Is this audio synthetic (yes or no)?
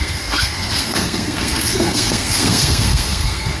yes